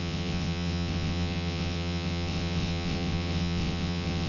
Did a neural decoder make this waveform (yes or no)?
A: yes